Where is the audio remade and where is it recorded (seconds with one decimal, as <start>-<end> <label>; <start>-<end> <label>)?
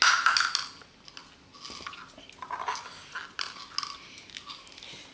0.0-5.1 recorded